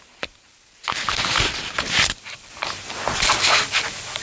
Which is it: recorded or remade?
recorded